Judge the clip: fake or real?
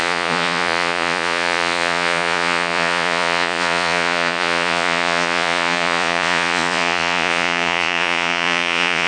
fake